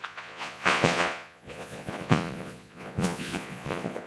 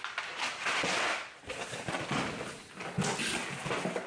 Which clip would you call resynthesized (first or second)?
first